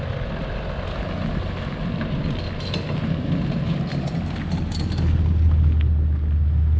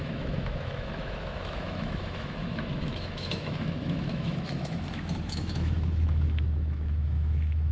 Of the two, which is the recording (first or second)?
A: first